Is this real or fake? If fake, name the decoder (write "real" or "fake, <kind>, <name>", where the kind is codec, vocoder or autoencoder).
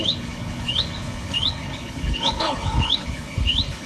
fake, codec, HILCodec